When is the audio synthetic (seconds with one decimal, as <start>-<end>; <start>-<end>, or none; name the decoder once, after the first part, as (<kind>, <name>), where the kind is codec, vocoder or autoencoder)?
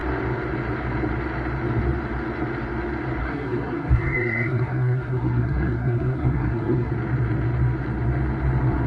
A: 3.2-6.9 (codec, SNAC)